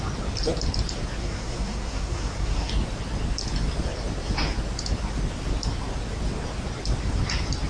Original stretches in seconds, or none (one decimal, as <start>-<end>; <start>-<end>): 0.0-1.2; 2.7-7.7